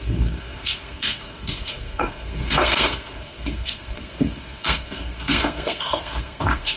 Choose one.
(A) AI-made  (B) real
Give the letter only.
A